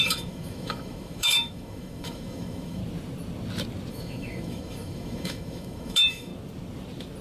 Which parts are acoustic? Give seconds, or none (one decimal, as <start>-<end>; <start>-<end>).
2.8-3.9; 6.3-7.2